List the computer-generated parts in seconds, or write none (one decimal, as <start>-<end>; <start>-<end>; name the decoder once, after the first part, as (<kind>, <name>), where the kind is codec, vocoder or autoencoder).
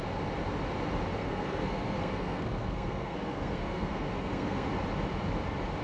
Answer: 1.2-4.7 (codec, SNAC)